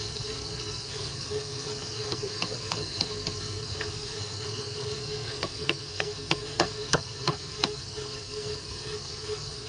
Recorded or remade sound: remade